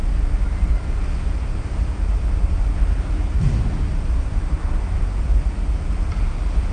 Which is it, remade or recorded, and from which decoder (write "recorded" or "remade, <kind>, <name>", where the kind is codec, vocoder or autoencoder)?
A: recorded